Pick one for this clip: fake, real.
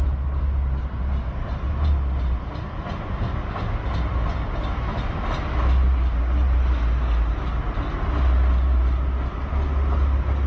real